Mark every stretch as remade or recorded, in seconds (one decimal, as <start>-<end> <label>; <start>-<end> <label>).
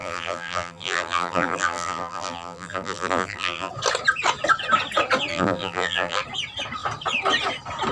0.0-3.7 remade; 3.7-5.3 recorded; 5.3-6.2 remade; 6.2-7.9 recorded